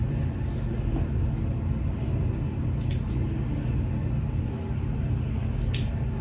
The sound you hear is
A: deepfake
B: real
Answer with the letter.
B